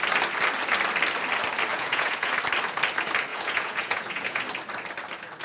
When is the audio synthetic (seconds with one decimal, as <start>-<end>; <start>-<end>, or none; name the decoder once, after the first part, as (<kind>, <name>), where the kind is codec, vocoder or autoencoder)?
1.7-2.3 (vocoder, Vocos); 3.3-4.4

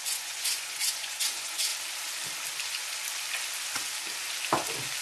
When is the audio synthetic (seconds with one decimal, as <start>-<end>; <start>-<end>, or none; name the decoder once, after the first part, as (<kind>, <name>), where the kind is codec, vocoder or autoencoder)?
0.0-1.7 (vocoder, Vocos)

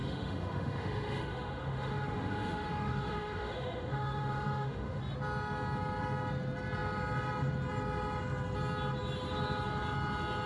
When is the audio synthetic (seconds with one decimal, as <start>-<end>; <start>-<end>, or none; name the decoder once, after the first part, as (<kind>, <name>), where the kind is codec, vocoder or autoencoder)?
0.0-5.0 (autoencoder, DAC-VAE)

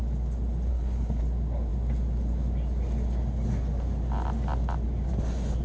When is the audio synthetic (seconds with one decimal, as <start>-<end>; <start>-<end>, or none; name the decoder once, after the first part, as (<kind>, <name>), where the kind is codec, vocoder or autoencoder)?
0.7-1.2 (codec, HILCodec)

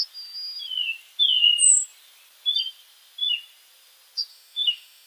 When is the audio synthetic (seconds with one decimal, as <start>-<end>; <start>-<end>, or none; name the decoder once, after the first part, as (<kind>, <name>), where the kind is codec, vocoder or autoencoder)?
4.3-5.1 (autoencoder, DAC-VAE)

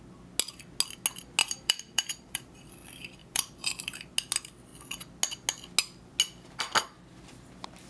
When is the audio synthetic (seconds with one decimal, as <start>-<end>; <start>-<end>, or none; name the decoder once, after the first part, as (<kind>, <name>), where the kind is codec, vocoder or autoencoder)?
1.4-2.7 (vocoder, BigVGAN v2); 3.2-4.1

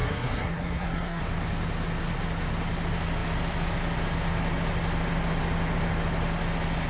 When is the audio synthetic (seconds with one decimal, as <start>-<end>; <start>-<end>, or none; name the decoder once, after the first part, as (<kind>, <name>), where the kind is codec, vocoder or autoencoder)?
0.0-1.2 (codec, SNAC)

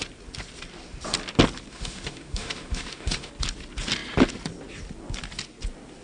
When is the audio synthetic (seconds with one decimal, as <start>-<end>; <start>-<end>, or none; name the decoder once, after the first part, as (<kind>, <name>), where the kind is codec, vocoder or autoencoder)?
1.7-3.3 (autoencoder, DAC-VAE)